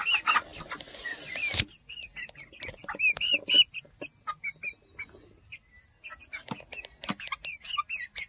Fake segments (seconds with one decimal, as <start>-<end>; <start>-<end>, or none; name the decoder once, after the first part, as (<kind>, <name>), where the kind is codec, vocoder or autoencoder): none